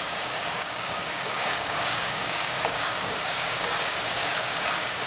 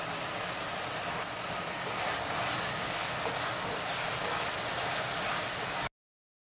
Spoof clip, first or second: first